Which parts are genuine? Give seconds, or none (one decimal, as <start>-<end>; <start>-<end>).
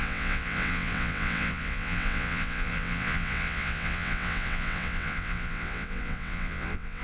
none